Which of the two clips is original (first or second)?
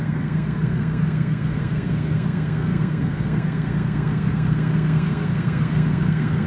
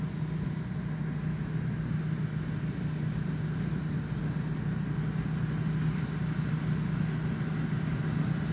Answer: second